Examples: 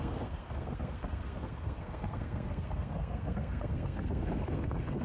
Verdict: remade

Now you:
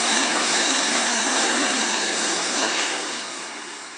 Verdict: remade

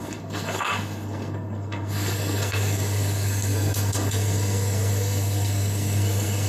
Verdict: remade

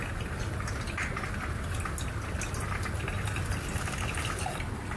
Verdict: recorded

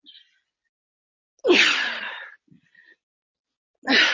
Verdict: recorded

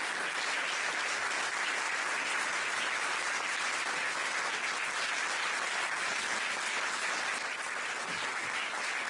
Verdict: recorded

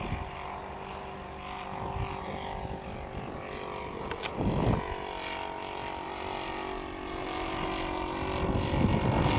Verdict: recorded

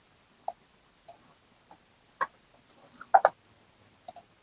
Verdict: recorded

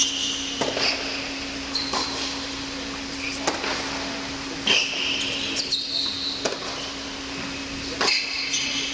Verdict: recorded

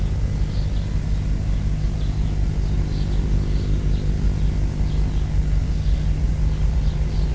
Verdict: recorded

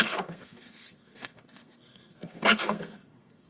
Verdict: remade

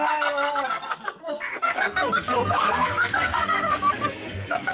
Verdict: remade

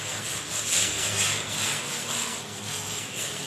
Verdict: remade